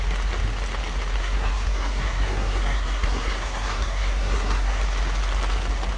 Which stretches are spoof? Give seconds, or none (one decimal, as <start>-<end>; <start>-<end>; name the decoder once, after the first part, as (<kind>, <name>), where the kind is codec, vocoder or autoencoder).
1.2-4.8 (codec, SNAC)